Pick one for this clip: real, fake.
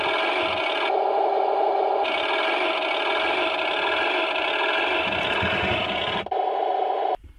real